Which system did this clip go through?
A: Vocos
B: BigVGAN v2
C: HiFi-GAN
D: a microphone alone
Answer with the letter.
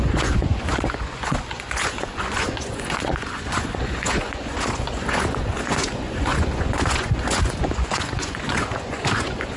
A